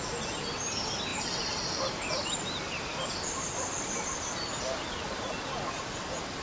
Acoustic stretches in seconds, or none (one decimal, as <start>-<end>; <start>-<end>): 0.0-6.4